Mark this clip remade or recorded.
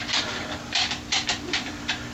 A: remade